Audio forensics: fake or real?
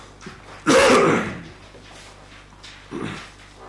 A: real